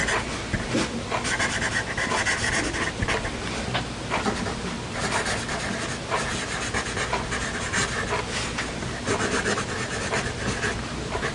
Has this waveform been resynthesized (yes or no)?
no